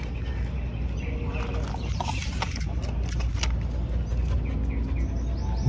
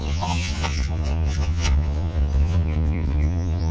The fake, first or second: second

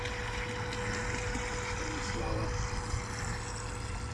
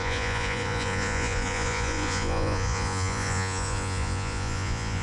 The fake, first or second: second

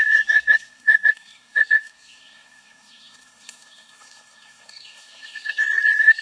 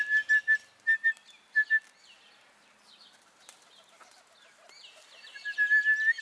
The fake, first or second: first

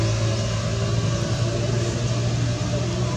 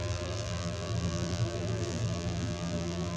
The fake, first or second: second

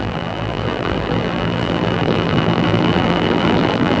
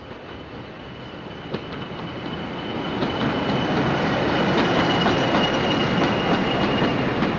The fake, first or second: first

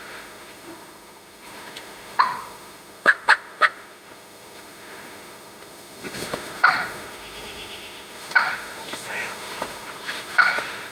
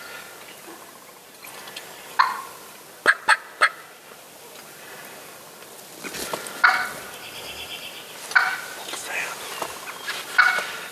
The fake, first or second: first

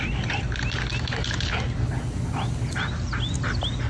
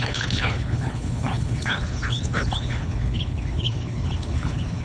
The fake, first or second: second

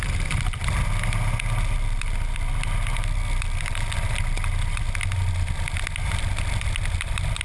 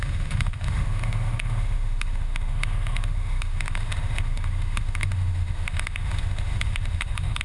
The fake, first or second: second